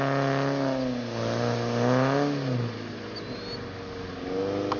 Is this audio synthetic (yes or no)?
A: no